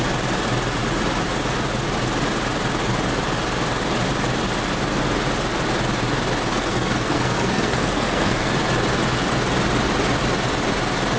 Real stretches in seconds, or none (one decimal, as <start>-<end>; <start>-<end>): 0.0-6.5; 8.5-11.2